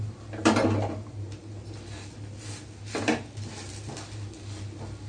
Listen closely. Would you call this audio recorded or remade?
recorded